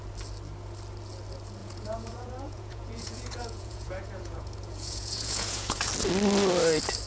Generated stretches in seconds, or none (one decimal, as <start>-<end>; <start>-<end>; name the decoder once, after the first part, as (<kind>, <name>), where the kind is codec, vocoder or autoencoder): 1.6-5.9 (vocoder, Vocos)